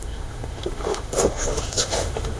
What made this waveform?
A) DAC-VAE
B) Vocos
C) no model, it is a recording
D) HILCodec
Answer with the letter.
A